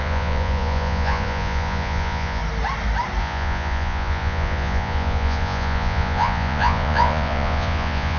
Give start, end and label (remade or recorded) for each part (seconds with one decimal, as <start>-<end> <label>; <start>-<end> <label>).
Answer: 0.0-2.4 remade; 2.4-3.2 recorded; 3.2-8.2 remade